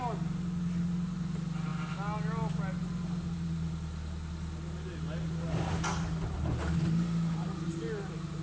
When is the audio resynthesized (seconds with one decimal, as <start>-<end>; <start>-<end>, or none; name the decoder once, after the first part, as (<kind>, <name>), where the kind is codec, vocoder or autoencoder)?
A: none